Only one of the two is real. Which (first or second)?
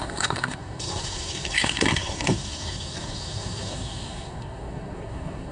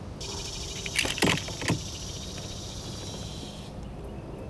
second